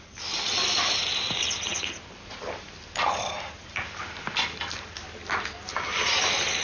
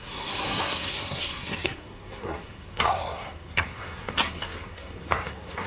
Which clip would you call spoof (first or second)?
second